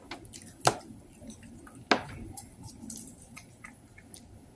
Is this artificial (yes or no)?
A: no